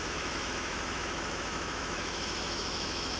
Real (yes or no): no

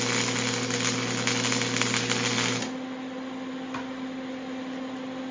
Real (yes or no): yes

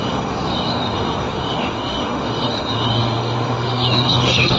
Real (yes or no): no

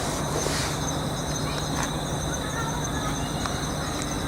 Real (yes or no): yes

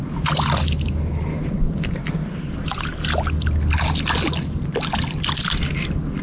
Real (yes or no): yes